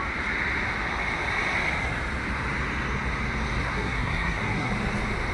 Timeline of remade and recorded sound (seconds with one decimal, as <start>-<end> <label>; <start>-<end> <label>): 0.0-3.6 recorded; 3.6-4.7 remade; 4.7-5.3 recorded